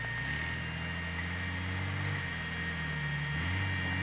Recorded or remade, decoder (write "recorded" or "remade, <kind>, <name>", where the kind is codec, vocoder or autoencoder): recorded